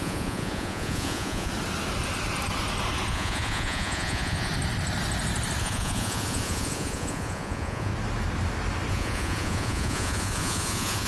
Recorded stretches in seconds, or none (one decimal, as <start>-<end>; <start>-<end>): 1.5-3.1; 4.5-5.6; 7.9-8.9